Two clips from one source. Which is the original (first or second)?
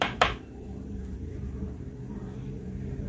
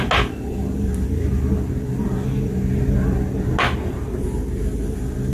second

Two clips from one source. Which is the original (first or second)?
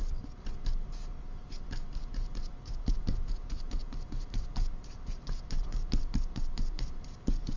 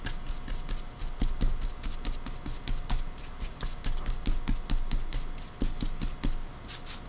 second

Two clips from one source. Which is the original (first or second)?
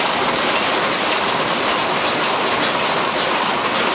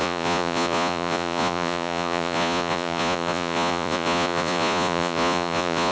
first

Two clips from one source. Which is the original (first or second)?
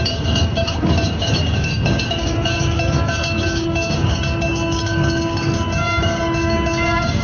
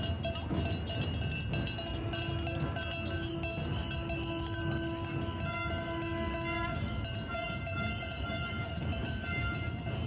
second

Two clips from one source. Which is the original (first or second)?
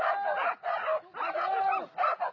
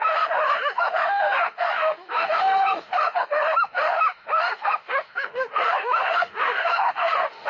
first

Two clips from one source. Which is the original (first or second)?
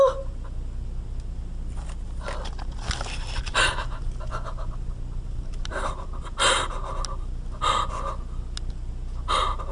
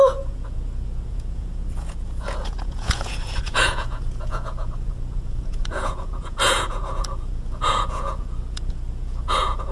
first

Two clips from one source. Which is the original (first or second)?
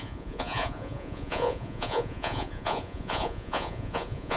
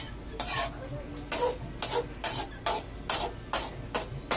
second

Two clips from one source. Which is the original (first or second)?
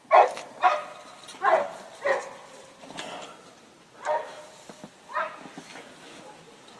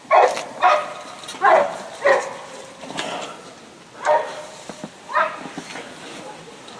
first